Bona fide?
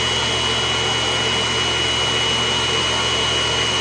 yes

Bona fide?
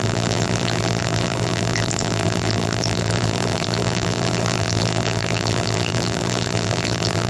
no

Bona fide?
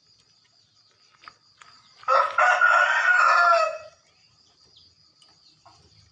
yes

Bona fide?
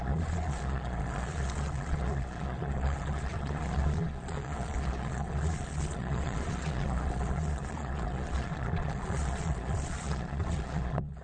no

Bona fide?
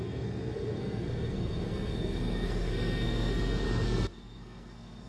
no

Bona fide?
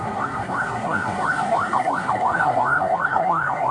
no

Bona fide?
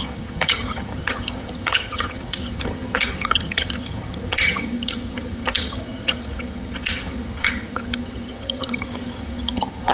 no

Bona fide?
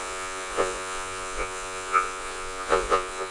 no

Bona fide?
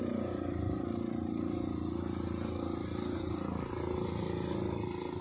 yes